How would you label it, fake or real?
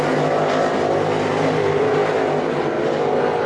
real